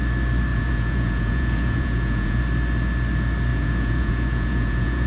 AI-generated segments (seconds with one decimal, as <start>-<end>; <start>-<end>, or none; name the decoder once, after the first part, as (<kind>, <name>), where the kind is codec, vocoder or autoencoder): 0.5-2.4 (vocoder, Vocos); 3.5-5.1